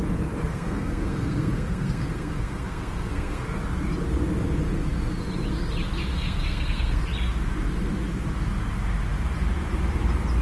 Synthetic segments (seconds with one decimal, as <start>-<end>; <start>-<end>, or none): 0.5-3.4; 6.1-7.0